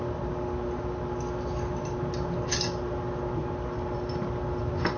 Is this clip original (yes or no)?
yes